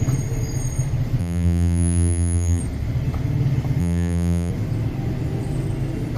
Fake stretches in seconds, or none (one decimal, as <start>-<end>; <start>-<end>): 1.2-2.6; 3.8-4.5